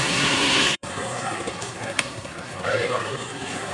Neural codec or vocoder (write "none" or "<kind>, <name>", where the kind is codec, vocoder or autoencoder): codec, SNAC